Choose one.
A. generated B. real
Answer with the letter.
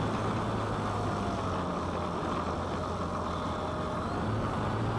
B